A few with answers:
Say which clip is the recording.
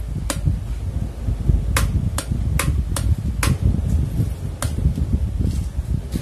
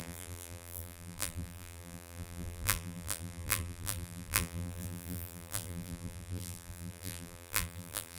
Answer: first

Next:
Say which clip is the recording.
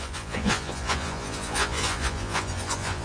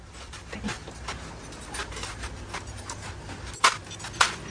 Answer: second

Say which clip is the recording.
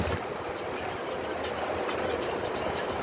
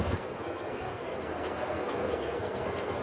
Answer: first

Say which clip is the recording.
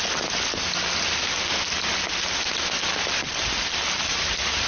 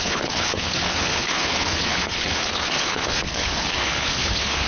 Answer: first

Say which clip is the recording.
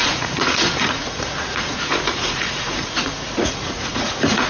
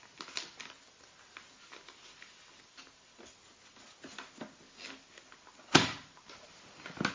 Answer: second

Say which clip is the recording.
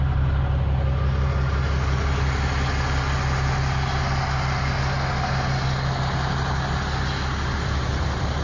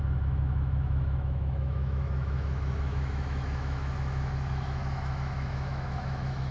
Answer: first